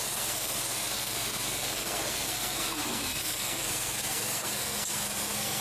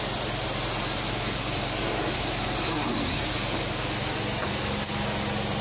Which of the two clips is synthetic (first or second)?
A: first